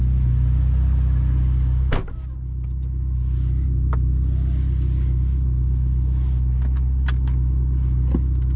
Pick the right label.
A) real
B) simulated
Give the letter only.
A